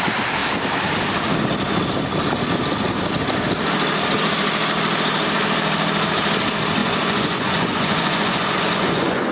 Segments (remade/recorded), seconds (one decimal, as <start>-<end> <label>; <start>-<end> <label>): 0.0-6.8 recorded; 6.8-9.3 remade